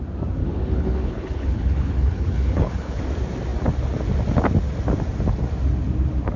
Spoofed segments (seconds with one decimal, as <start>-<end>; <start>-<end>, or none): 0.4-3.0